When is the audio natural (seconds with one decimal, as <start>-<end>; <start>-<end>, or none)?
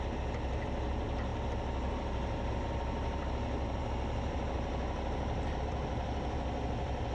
0.0-7.1